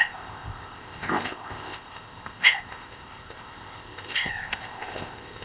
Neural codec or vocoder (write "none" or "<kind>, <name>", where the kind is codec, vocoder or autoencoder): codec, ZipCodec